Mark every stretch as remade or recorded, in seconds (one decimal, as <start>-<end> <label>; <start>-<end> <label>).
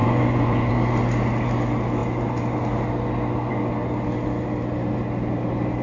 0.0-0.7 remade; 0.7-5.8 recorded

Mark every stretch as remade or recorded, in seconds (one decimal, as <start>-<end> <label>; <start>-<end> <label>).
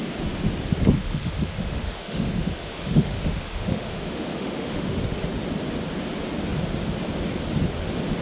0.0-1.0 recorded; 1.0-5.0 remade; 5.0-8.2 recorded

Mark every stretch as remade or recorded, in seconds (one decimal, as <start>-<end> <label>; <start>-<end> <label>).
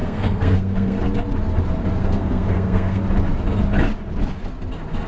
0.0-1.0 remade; 1.0-2.0 recorded; 2.0-3.0 remade; 3.0-5.1 recorded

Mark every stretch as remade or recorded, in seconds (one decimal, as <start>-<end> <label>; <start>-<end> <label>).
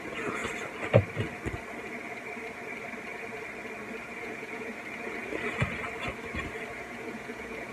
0.0-0.4 remade; 0.4-4.2 recorded; 4.2-4.7 remade; 4.7-6.7 recorded; 6.7-7.7 remade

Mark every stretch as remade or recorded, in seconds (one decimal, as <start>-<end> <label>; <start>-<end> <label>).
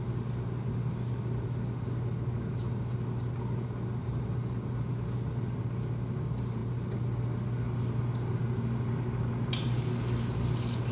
0.0-4.0 recorded; 4.0-4.9 remade; 4.9-10.9 recorded